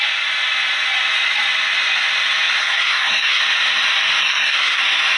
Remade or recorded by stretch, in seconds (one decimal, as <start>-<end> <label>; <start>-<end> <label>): 0.0-2.6 recorded; 2.6-3.4 remade; 3.4-4.2 recorded; 4.2-4.8 remade; 4.8-5.2 recorded